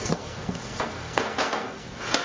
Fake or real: fake